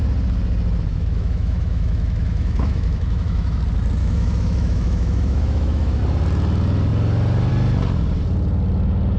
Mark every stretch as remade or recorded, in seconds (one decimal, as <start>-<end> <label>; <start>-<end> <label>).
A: 0.0-0.9 recorded; 0.9-3.6 remade; 3.6-4.0 recorded; 4.0-6.0 remade; 6.0-9.2 recorded